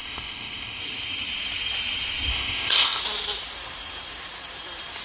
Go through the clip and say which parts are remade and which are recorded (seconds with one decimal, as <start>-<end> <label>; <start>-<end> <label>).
0.0-0.8 remade; 0.8-2.3 recorded; 2.3-3.0 remade; 3.0-5.0 recorded